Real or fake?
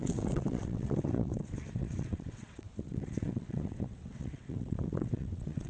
fake